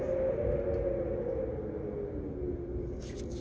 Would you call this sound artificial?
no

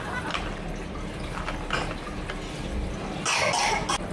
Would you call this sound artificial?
no